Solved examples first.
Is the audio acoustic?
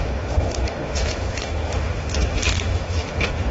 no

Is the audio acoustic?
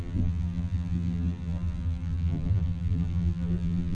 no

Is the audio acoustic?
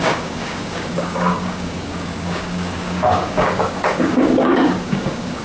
no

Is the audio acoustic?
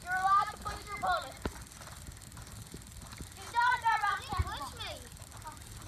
yes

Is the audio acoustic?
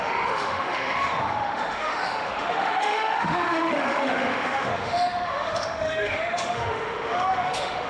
no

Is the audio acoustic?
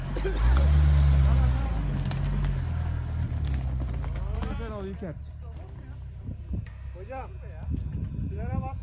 yes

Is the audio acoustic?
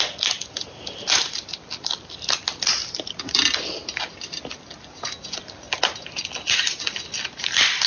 yes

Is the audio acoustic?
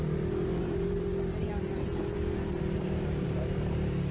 no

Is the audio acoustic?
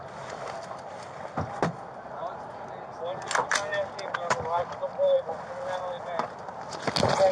yes